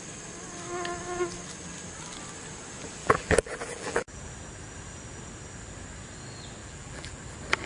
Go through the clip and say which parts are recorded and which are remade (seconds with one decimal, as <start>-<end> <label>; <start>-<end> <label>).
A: 0.0-3.0 recorded; 3.0-4.3 remade; 4.3-6.6 recorded; 6.6-7.2 remade; 7.2-7.7 recorded